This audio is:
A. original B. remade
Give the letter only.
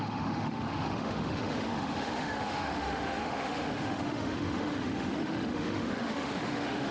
B